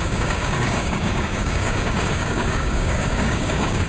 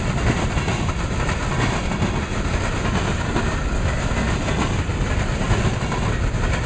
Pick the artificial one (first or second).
first